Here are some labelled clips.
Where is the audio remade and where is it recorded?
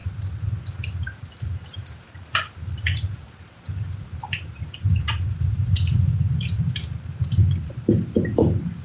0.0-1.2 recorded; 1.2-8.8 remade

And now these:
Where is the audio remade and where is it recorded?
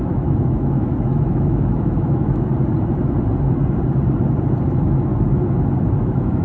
0.0-2.5 remade; 2.5-4.6 recorded; 4.6-5.1 remade; 5.1-6.0 recorded; 6.0-6.4 remade